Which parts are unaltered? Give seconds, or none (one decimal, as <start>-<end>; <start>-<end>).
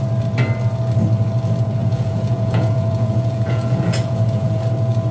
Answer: 0.0-1.8; 4.6-5.1